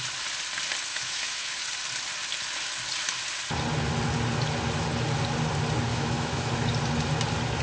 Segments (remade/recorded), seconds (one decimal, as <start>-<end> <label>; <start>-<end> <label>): 0.0-0.9 recorded; 0.9-1.5 remade; 1.5-5.9 recorded; 5.9-6.5 remade; 6.5-7.6 recorded